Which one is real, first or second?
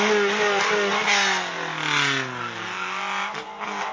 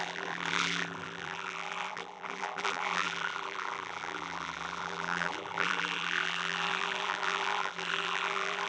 first